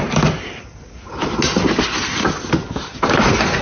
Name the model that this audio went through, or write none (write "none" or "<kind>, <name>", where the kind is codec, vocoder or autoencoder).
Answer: none